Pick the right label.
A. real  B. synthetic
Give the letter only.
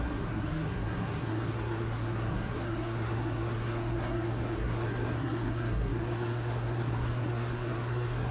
B